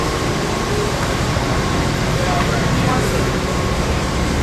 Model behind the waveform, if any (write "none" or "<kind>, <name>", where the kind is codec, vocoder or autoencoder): vocoder, BigVGAN v2